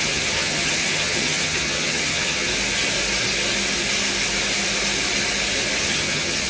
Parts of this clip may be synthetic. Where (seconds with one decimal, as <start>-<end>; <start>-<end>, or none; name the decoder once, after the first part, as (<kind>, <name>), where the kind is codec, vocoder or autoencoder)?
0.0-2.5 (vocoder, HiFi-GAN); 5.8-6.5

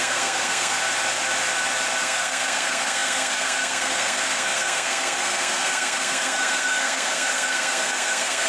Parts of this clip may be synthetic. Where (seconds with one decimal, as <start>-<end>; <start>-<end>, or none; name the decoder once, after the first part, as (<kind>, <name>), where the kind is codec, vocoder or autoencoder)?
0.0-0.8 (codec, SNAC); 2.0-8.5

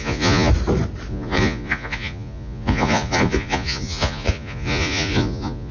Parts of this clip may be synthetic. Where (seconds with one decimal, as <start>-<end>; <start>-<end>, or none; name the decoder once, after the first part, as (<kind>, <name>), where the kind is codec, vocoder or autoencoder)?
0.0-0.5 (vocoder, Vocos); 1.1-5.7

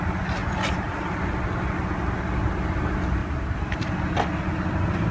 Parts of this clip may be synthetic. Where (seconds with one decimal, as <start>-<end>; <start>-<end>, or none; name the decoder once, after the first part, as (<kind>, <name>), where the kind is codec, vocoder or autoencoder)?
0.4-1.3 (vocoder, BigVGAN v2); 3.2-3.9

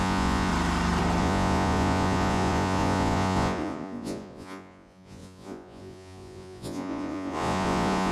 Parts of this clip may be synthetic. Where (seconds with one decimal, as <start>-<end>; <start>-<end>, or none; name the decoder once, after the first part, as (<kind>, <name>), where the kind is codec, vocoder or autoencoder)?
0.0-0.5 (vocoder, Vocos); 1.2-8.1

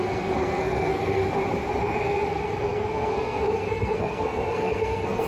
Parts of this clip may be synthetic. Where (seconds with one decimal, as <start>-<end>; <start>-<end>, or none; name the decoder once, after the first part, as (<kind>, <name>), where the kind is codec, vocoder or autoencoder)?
0.0-1.2 (codec, SNAC); 1.8-5.3

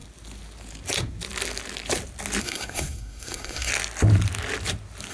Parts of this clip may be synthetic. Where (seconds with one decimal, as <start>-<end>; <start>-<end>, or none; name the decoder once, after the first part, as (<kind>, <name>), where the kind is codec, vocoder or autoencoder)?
2.4-3.7 (codec, SNAC)

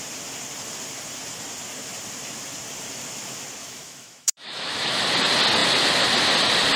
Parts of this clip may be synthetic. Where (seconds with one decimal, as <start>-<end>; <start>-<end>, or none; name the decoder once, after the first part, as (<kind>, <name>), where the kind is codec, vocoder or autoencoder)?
3.6-5.0 (autoencoder, DAC-VAE)